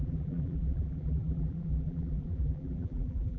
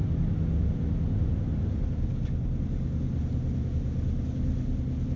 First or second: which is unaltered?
second